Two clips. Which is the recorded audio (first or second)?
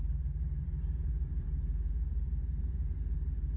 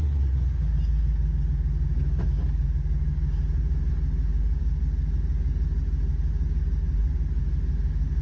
second